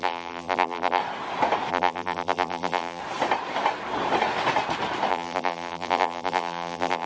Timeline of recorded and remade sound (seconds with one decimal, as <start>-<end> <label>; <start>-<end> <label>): 0.0-1.0 remade; 1.0-1.7 recorded; 1.7-3.0 remade; 3.0-5.1 recorded; 5.1-7.1 remade

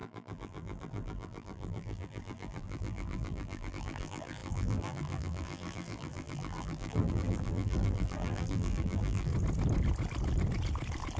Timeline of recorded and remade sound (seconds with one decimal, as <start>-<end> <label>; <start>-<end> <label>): 0.0-9.3 remade; 9.3-11.2 recorded

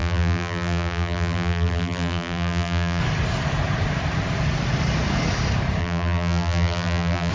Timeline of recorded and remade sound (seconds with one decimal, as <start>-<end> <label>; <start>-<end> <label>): 0.0-3.0 remade; 3.0-5.8 recorded; 5.8-7.3 remade

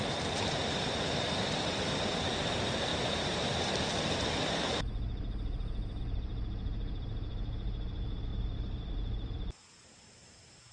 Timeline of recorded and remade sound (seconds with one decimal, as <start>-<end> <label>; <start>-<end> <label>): 0.0-10.7 remade

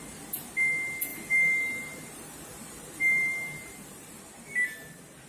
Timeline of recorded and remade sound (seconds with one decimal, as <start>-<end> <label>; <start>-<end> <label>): 0.0-1.1 recorded; 1.1-4.3 remade; 4.3-5.3 recorded

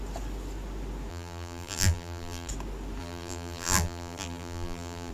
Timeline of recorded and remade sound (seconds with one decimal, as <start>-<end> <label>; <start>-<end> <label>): 0.0-1.1 recorded; 1.1-2.5 remade; 2.5-3.0 recorded; 3.0-5.1 remade

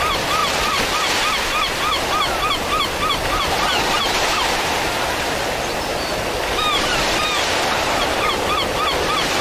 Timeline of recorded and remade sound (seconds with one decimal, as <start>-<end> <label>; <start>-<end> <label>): 0.0-5.9 recorded; 5.9-8.3 remade; 8.3-9.4 recorded